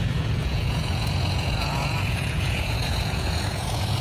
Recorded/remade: remade